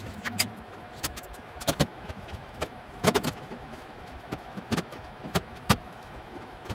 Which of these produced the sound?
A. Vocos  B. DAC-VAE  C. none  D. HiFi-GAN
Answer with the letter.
B